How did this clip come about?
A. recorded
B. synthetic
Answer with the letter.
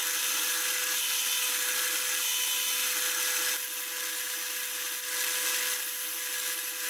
A